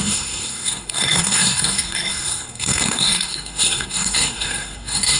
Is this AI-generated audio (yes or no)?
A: yes